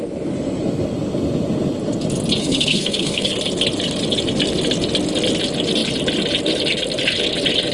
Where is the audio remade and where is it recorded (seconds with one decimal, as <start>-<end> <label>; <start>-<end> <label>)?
0.0-2.4 recorded; 2.4-3.3 remade; 3.3-7.7 recorded